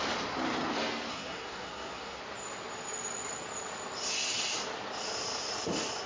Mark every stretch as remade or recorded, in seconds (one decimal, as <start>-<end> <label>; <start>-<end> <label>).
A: 0.0-1.1 recorded; 1.1-2.2 remade; 2.2-6.1 recorded